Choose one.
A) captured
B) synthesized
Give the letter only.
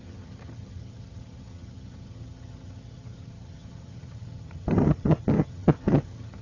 B